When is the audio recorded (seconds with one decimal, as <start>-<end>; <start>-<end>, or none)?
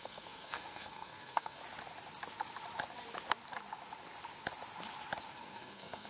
1.6-5.3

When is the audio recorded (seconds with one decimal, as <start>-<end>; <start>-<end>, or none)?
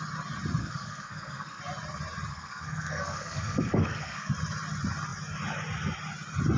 0.0-0.6; 1.6-2.3; 4.3-6.6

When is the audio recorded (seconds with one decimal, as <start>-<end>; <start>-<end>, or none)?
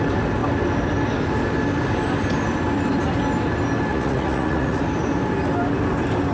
0.0-3.9; 4.8-6.3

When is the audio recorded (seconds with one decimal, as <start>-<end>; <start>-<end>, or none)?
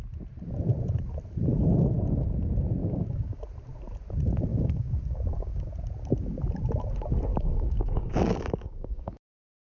0.0-2.8; 3.4-4.5; 5.7-7.3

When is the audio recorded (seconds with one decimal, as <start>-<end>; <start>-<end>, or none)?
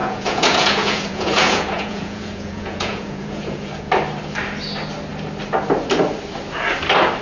3.9-7.2